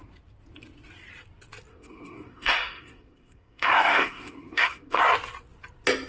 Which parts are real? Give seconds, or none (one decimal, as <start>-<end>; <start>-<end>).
0.0-1.7; 5.0-6.1

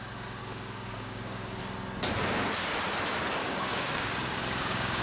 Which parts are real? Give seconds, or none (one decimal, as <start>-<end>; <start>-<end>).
0.0-0.4; 1.6-3.4

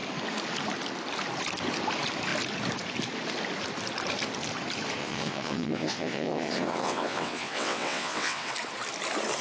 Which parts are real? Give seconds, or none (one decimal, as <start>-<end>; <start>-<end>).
0.0-5.0; 8.5-9.4

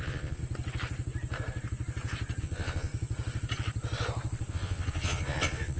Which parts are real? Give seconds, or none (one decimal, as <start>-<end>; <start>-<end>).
0.4-2.4; 2.9-4.5

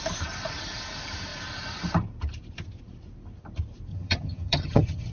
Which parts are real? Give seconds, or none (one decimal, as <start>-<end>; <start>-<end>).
0.0-3.9